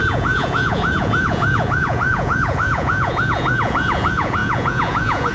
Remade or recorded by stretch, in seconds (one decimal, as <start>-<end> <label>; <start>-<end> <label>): 0.0-5.3 remade